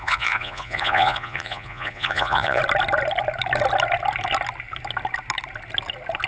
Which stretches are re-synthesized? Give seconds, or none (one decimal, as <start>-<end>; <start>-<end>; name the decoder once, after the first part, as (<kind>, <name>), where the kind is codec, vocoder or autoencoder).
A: 0.0-2.6 (vocoder, Vocos)